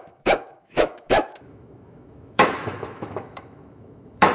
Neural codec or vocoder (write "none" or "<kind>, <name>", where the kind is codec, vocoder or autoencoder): autoencoder, DAC-VAE